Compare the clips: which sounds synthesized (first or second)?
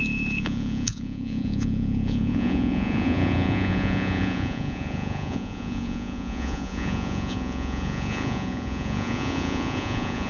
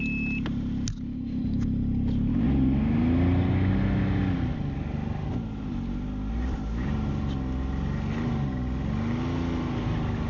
first